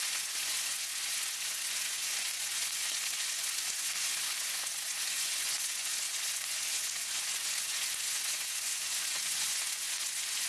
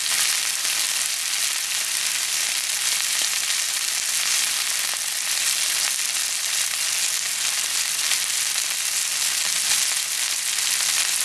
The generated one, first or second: first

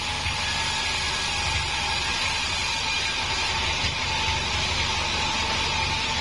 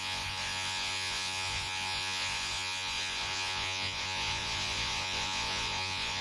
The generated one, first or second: second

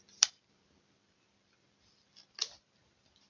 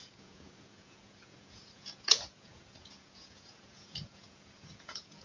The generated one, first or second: second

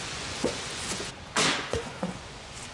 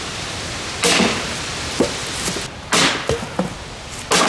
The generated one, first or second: first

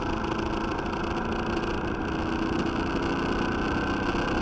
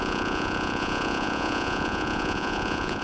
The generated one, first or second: second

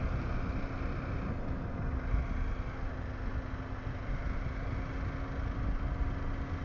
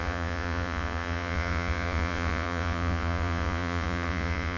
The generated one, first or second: second